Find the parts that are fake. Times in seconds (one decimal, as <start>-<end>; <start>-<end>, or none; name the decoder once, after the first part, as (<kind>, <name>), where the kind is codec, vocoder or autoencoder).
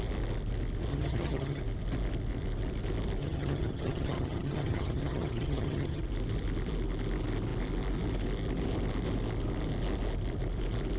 0.9-1.6 (vocoder, HiFi-GAN); 3.2-6.0